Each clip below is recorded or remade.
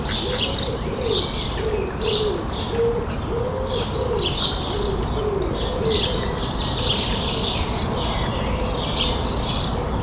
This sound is recorded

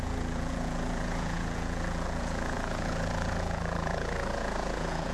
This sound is remade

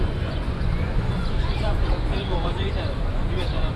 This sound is remade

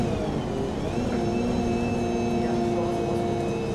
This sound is recorded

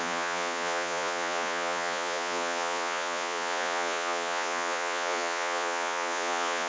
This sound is remade